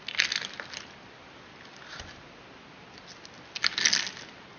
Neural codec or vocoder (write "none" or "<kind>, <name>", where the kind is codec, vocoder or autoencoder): none